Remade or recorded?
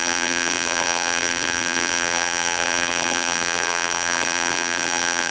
remade